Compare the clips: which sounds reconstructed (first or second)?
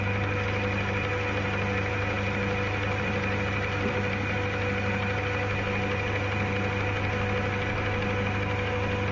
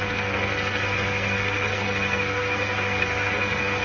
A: second